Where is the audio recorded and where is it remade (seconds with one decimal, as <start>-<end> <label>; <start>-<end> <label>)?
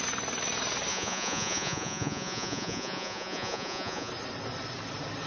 0.0-0.9 recorded; 0.9-4.1 remade; 4.1-5.3 recorded